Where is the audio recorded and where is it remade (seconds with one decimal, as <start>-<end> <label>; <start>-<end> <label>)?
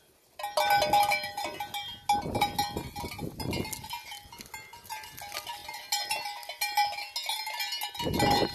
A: 0.0-8.5 recorded